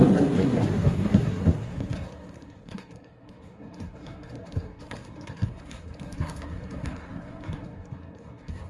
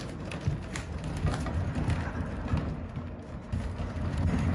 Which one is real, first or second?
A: second